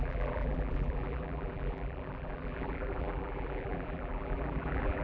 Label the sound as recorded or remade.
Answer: remade